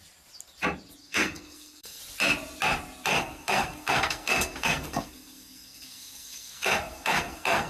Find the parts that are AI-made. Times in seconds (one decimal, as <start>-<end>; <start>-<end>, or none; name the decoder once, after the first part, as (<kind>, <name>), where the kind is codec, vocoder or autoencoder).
1.0-2.0 (codec, SNAC); 3.1-7.7